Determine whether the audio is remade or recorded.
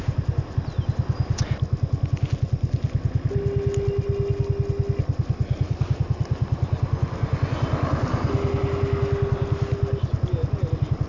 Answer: recorded